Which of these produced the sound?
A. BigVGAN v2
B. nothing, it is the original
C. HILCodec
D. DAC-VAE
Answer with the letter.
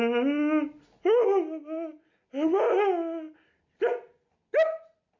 B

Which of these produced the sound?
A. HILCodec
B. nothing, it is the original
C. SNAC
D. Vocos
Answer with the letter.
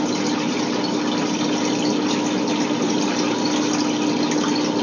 B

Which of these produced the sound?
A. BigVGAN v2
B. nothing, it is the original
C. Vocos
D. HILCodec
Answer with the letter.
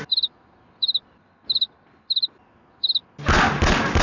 B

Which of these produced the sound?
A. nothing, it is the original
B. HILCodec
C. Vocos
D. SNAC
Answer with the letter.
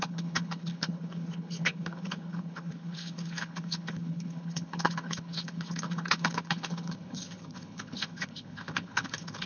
B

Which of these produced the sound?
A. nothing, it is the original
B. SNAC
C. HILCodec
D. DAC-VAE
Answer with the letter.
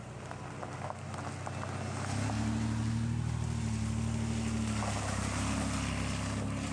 A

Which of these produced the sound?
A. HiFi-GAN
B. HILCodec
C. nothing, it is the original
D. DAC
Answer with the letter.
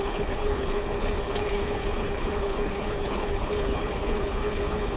B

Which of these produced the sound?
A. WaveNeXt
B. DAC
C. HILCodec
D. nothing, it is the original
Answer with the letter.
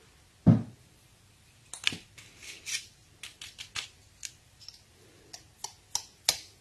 D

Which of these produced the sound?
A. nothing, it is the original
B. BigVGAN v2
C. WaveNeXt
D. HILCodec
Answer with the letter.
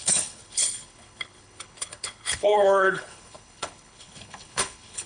D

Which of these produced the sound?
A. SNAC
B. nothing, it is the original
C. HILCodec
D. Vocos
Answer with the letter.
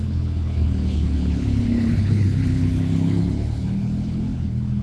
C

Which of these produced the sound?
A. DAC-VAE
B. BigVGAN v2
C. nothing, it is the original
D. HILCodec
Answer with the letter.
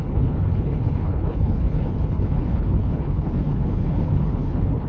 D